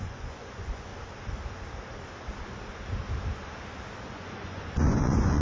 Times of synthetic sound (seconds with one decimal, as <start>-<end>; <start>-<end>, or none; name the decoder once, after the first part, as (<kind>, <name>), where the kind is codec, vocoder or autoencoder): 0.0-0.9 (vocoder, Vocos); 4.1-5.4